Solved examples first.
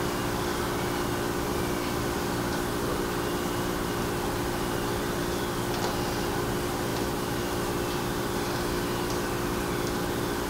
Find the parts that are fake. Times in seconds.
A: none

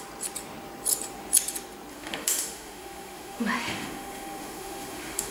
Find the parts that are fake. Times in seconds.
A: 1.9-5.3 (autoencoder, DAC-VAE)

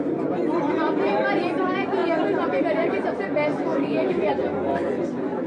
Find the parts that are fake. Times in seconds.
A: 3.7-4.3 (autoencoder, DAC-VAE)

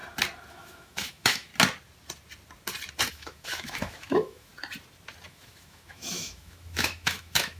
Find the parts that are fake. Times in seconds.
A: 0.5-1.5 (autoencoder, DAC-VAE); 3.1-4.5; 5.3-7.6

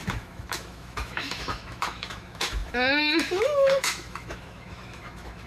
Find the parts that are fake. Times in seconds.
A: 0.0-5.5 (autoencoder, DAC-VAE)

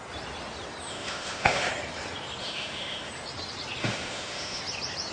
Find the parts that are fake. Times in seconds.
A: 0.9-1.7 (autoencoder, DAC-VAE); 2.4-3.1; 3.8-4.6

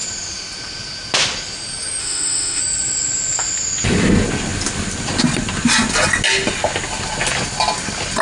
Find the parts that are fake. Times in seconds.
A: 2.0-2.6 (autoencoder, DAC-VAE)